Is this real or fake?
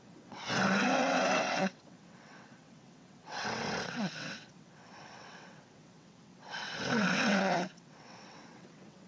fake